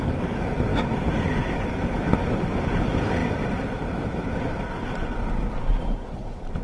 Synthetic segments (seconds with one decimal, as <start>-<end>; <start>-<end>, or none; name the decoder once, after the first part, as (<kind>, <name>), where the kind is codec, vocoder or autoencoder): 0.7-1.5 (vocoder, BigVGAN v2)